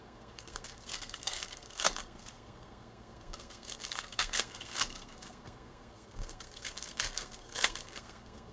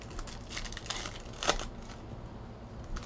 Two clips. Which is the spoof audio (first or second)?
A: first